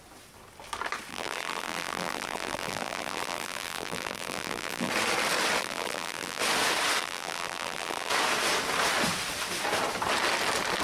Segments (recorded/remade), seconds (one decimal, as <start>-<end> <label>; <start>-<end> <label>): 0.0-1.1 recorded; 1.1-4.9 remade; 4.9-5.6 recorded; 5.6-6.4 remade; 6.4-7.0 recorded; 7.0-8.1 remade; 8.1-10.8 recorded